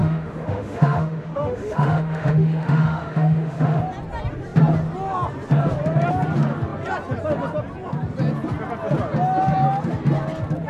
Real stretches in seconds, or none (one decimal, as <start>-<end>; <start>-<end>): 3.8-10.7